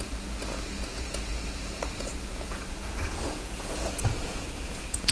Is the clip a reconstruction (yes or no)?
yes